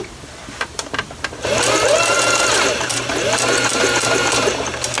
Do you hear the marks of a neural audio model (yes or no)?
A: yes